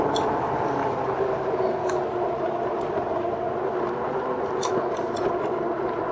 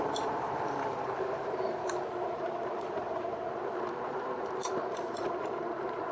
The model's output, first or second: second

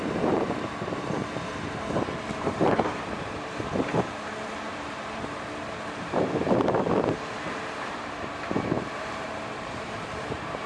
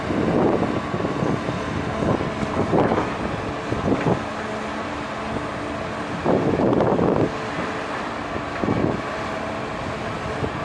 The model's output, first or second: first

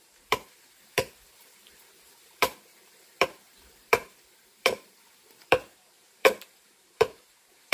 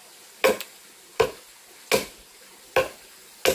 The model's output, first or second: first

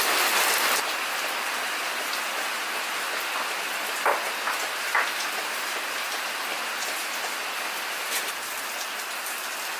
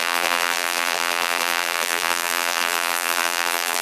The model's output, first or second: second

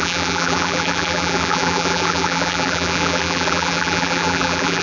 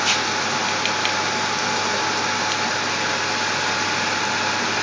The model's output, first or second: first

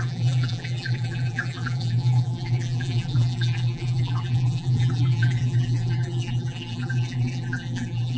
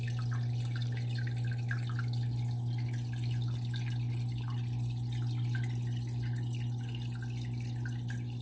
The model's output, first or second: first